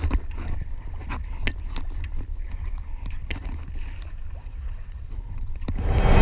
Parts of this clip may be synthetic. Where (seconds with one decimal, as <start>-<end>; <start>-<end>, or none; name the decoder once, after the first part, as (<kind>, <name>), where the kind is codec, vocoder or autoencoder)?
4.4-5.5 (vocoder, WaveNeXt)